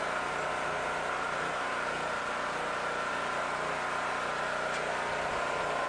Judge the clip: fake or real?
real